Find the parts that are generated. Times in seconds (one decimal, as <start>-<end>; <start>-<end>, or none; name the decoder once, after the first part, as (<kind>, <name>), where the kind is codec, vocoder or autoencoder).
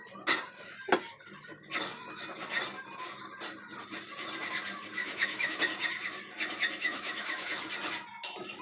5.0-5.6 (autoencoder, DAC-VAE); 6.8-7.6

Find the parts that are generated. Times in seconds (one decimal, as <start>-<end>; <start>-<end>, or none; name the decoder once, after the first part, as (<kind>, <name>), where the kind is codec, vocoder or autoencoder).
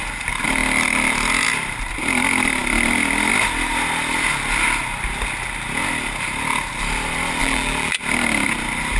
7.4-8.0 (vocoder, BigVGAN v2)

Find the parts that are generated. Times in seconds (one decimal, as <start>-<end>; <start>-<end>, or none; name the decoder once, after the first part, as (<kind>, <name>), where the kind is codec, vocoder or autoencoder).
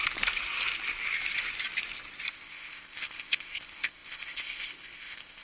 2.3-5.4 (codec, ZipCodec)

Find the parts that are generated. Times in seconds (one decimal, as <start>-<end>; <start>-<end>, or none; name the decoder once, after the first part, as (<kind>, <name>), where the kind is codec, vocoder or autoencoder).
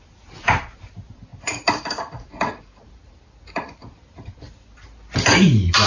none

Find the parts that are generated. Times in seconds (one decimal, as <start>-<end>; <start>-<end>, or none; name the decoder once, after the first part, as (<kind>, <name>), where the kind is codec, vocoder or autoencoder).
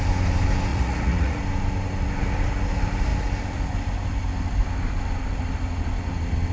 0.7-1.4 (vocoder, Vocos)